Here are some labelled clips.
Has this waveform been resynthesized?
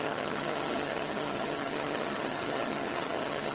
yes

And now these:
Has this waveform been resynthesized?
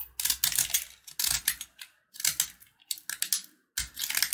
no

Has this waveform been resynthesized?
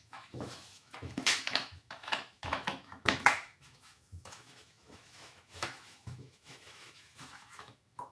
yes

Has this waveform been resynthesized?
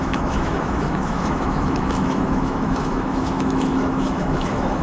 yes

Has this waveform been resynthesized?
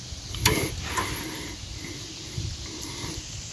no